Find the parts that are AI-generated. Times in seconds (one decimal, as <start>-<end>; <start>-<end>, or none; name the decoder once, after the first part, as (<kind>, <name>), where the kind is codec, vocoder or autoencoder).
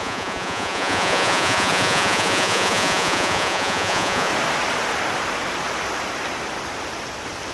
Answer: 0.0-4.3 (vocoder, Vocos)